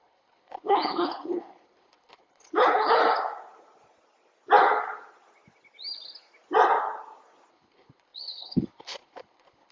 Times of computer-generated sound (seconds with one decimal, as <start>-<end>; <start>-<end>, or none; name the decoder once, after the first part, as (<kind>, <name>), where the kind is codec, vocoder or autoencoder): 0.0-3.0 (codec, HILCodec); 7.5-9.7